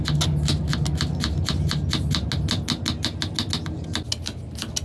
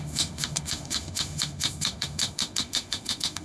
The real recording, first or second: first